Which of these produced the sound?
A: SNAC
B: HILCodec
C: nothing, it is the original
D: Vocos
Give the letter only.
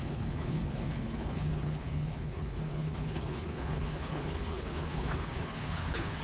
B